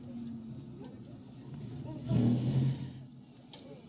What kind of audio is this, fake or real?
real